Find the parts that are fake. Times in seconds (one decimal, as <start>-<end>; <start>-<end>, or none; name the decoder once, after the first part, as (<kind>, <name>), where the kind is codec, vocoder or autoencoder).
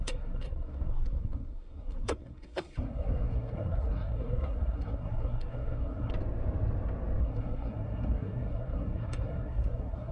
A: 0.0-6.1 (codec, SNAC); 7.2-10.1